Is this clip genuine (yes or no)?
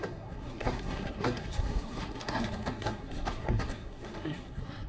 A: no